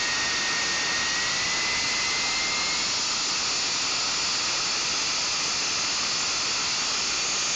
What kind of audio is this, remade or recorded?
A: recorded